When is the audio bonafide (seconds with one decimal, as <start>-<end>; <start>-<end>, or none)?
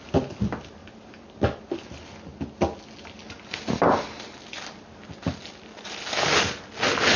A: 0.0-7.2